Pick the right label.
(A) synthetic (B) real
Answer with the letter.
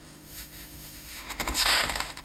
A